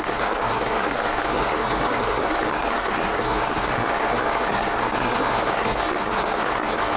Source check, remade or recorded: remade